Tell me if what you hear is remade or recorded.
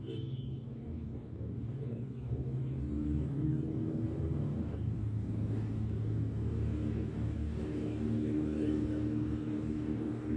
remade